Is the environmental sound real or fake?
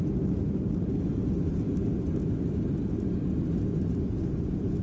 real